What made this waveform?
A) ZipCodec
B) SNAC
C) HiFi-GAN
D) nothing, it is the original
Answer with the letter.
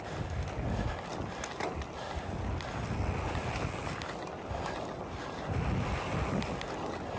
D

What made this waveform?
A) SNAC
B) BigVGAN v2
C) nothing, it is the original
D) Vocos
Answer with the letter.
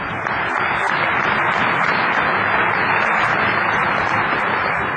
C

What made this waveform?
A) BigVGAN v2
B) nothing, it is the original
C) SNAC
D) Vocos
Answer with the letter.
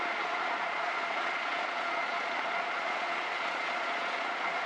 D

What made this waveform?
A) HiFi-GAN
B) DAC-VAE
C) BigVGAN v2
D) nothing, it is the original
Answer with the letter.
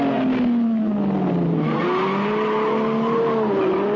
D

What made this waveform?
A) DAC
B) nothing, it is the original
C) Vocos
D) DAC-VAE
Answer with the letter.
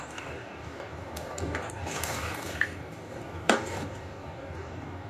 A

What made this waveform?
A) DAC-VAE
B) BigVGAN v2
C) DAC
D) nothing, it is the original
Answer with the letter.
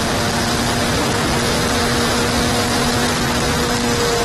D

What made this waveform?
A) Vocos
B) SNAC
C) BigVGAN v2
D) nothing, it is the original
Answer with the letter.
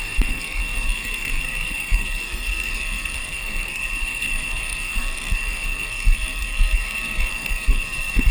B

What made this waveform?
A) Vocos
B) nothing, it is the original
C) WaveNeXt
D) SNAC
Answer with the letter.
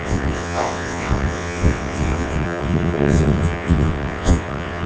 C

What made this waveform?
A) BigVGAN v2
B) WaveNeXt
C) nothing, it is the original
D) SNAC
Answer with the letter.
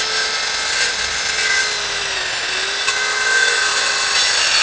C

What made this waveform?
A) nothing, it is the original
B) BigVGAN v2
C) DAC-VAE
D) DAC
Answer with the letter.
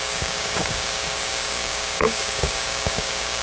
D